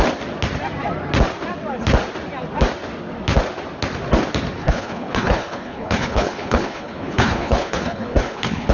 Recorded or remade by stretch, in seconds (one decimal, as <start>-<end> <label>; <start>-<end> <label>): 0.0-4.6 recorded; 4.6-8.7 remade

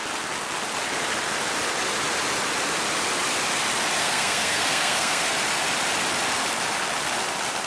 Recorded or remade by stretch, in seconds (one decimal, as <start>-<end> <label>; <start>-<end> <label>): 0.0-4.0 recorded; 4.0-5.3 remade; 5.3-7.7 recorded

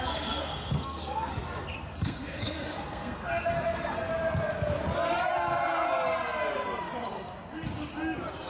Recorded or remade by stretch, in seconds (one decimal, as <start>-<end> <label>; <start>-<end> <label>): 0.0-1.3 remade; 1.3-2.0 recorded; 2.0-4.1 remade; 4.1-8.5 recorded

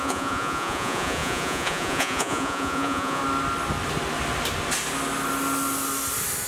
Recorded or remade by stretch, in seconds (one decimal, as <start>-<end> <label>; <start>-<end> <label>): 0.0-3.2 remade; 3.2-6.5 recorded

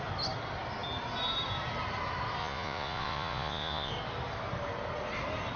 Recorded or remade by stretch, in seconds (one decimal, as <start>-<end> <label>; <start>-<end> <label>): 0.0-2.4 recorded; 2.4-3.9 remade; 3.9-5.6 recorded

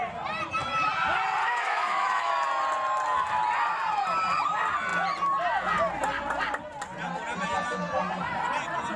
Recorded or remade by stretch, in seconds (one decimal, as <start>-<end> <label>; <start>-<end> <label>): 0.0-1.4 recorded; 1.4-2.3 remade; 2.3-9.0 recorded

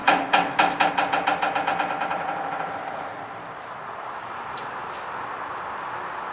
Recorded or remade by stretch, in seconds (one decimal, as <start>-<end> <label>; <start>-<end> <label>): 0.0-0.9 remade; 0.9-3.8 recorded; 3.8-4.6 remade; 4.6-6.3 recorded

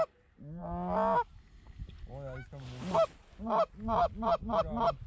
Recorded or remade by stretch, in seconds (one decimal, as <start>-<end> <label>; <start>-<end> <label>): 0.0-5.1 recorded